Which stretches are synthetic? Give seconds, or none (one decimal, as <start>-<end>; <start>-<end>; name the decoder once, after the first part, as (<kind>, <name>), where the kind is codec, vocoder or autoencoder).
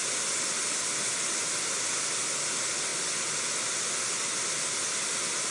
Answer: none